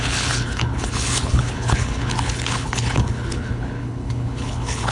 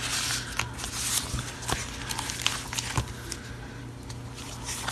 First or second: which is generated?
first